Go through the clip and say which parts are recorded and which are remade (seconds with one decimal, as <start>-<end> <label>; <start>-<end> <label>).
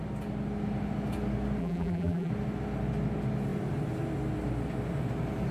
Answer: 0.0-1.6 recorded; 1.6-2.3 remade; 2.3-5.5 recorded